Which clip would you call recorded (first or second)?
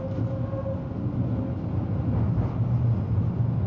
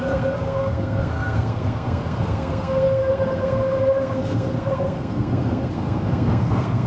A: first